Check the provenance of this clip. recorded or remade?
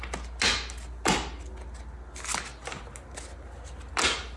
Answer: recorded